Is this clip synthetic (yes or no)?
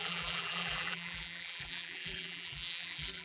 yes